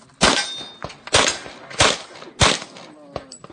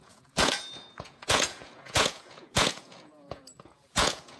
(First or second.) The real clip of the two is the first